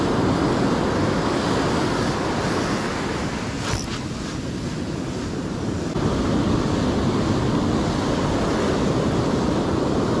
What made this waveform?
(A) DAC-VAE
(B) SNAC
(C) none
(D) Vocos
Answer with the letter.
C